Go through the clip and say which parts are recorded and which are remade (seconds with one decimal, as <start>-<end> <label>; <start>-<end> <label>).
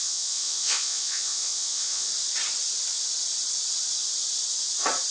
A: 0.0-2.1 remade; 2.1-5.1 recorded